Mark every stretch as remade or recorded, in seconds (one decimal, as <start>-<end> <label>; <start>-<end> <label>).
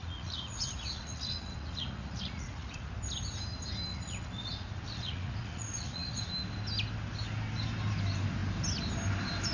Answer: 0.0-2.9 remade; 2.9-3.9 recorded; 3.9-6.3 remade; 6.3-9.5 recorded